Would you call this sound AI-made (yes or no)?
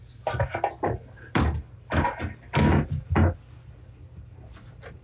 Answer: no